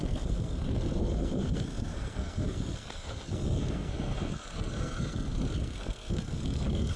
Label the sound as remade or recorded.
remade